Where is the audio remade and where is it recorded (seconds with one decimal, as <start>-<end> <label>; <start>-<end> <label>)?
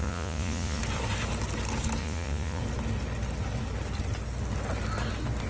0.0-0.8 remade; 0.8-2.0 recorded; 2.0-2.6 remade; 2.6-5.5 recorded